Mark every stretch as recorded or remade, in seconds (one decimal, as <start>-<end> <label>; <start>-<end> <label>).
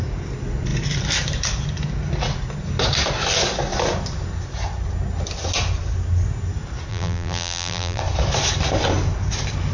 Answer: 0.0-6.9 recorded; 6.9-8.0 remade; 8.0-9.7 recorded